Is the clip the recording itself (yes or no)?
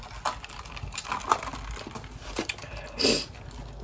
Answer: yes